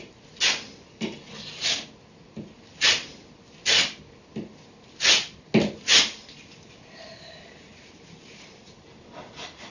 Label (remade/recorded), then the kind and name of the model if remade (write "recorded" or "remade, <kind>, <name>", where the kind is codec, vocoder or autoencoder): recorded